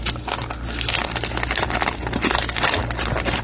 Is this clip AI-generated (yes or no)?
no